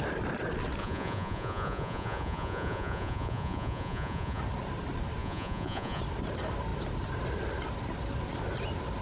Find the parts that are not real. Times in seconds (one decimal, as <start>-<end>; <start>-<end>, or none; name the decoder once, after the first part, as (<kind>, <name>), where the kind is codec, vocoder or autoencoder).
0.8-4.4 (vocoder, Vocos); 5.2-6.0